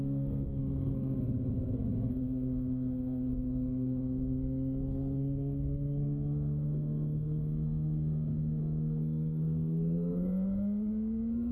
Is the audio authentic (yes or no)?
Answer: no